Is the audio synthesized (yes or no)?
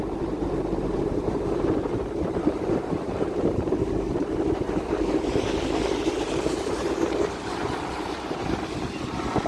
yes